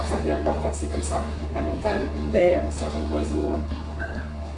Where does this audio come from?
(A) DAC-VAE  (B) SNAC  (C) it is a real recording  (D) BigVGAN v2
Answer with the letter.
B